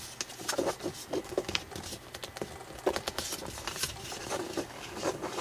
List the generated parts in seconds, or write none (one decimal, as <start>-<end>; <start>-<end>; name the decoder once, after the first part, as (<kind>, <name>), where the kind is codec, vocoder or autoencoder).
1.0-1.6 (codec, DAC); 4.2-5.4